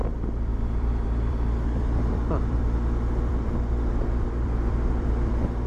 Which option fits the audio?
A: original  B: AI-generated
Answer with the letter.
B